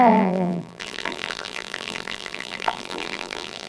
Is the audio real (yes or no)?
no